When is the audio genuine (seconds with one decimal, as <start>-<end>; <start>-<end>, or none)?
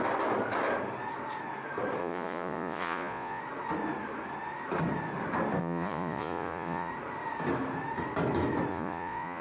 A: 0.0-2.0; 3.4-5.6; 6.9-8.7